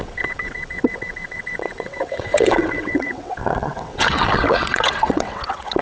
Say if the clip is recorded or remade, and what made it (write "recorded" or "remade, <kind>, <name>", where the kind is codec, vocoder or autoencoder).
remade, vocoder, WaveNeXt